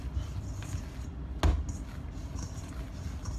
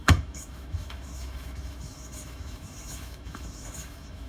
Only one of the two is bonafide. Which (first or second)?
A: first